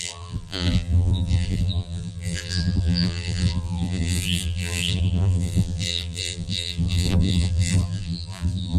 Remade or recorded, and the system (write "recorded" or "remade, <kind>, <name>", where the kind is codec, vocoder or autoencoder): remade, vocoder, BigVGAN v2